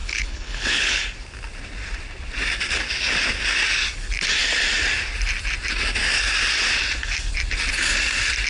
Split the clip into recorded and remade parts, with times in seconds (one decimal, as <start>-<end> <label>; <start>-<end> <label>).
0.0-1.0 remade; 1.0-8.5 recorded